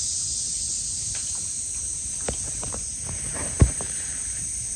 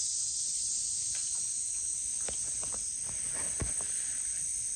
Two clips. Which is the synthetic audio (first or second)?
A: first